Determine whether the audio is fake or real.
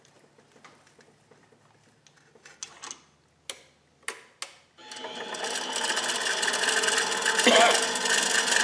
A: real